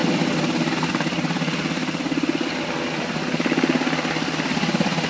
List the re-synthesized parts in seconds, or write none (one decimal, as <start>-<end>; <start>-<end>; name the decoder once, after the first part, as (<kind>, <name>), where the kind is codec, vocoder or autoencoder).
none